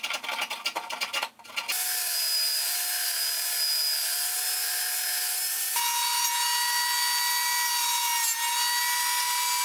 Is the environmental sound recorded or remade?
recorded